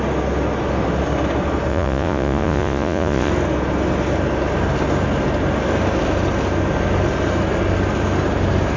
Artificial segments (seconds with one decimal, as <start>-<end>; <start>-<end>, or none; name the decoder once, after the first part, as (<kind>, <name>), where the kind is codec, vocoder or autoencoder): 1.7-3.3 (vocoder, Vocos)